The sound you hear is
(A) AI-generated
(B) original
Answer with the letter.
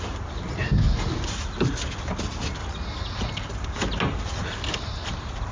B